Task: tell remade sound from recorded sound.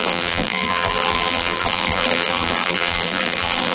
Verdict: remade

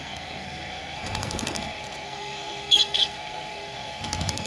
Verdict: remade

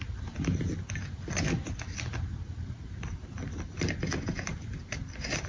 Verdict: recorded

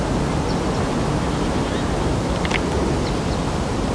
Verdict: recorded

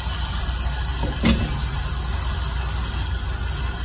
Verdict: recorded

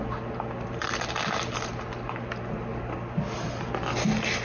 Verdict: recorded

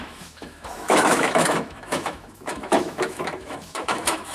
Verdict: remade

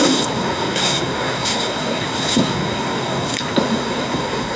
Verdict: remade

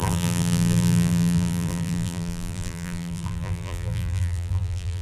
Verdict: remade